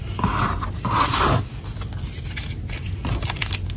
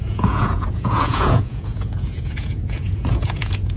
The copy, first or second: second